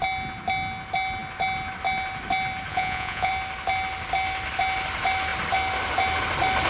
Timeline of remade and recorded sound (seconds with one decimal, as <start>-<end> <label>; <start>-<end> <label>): 0.0-2.7 recorded; 2.7-3.3 remade; 3.3-6.7 recorded